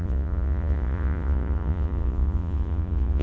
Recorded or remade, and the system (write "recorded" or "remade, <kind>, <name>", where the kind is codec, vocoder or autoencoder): remade, vocoder, Vocos